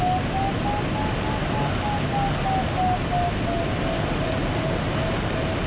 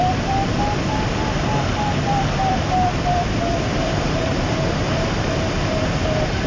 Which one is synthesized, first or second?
second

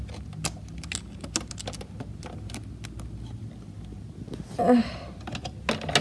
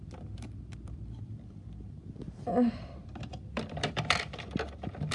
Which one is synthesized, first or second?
second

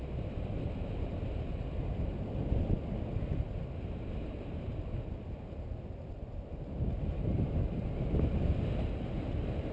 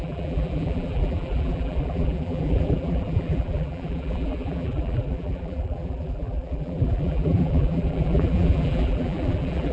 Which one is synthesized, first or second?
second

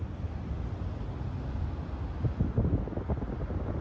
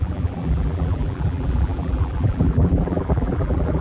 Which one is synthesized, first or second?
second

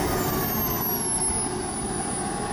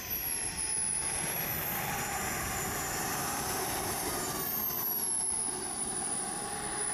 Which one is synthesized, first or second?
second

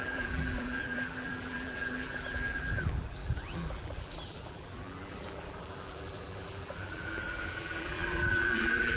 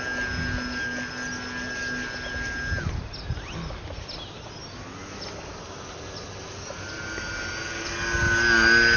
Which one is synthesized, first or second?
first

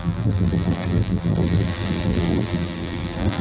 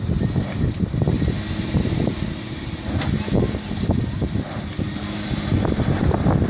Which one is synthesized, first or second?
first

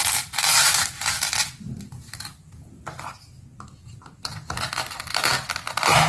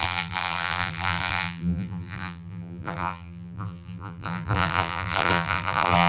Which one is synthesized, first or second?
second